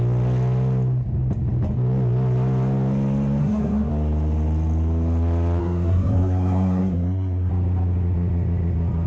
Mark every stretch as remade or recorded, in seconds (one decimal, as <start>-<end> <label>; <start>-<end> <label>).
0.0-3.4 recorded; 3.4-3.9 remade; 3.9-5.6 recorded; 5.6-7.5 remade; 7.5-9.1 recorded